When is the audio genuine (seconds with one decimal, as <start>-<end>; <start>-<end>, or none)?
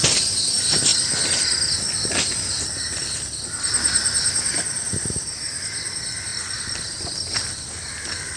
0.0-8.4